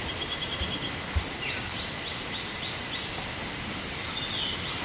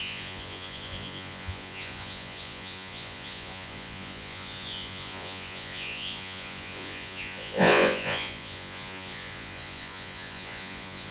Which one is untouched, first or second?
first